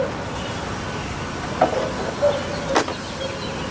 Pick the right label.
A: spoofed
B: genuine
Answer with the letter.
B